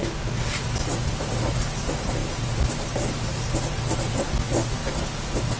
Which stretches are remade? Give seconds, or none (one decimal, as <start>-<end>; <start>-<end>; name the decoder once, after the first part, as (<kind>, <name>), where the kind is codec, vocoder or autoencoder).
none